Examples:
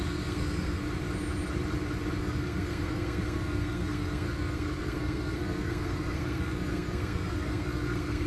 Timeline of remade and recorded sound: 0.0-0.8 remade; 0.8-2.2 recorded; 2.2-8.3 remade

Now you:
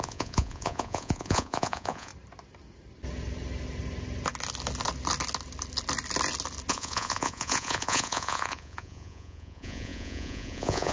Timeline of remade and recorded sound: 0.0-2.1 remade; 2.1-6.7 recorded; 6.7-10.9 remade